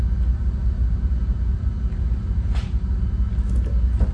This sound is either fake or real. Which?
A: real